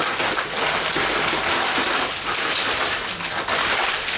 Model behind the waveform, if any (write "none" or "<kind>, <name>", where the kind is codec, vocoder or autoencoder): none